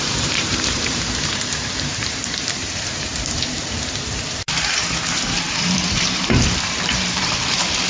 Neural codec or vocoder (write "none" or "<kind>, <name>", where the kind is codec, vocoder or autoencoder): vocoder, BigVGAN v2